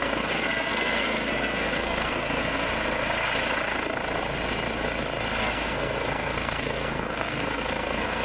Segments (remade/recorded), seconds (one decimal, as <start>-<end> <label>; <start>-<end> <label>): 0.0-2.7 remade; 2.7-5.4 recorded; 5.4-8.2 remade